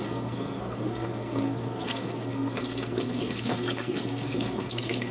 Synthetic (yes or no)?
yes